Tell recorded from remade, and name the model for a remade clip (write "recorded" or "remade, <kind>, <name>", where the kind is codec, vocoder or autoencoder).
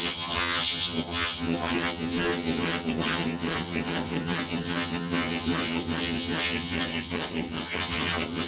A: remade, vocoder, HiFi-GAN